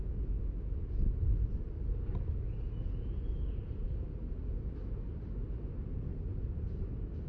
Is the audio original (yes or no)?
yes